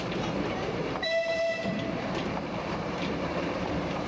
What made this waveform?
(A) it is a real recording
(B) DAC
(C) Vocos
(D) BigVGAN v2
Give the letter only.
D